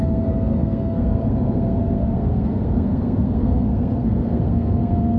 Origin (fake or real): fake